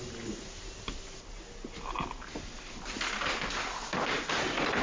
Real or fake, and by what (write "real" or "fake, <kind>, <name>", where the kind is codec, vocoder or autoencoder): real